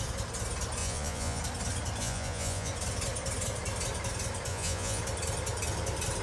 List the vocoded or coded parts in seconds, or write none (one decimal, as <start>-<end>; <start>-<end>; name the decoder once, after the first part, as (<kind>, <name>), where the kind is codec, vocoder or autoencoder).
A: 0.8-1.4 (vocoder, Vocos); 2.0-2.7; 4.5-5.0